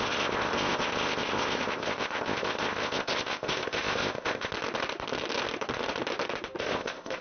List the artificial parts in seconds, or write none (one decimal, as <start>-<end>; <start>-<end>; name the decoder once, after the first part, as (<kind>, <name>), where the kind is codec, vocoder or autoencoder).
0.0-4.5 (codec, ZipCodec); 6.6-7.2